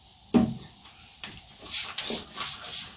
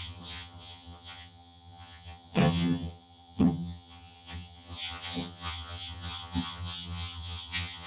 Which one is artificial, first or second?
second